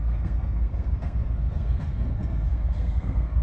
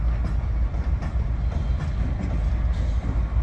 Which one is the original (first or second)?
second